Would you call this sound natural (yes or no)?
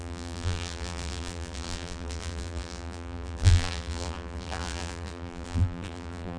no